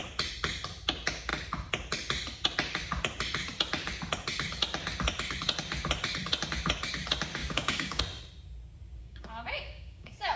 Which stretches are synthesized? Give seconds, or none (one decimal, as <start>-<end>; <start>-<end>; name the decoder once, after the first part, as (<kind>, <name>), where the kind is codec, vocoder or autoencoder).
7.4-8.0 (codec, DAC); 9.0-10.4